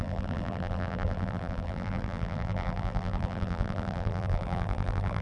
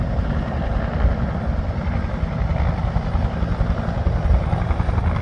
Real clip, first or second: second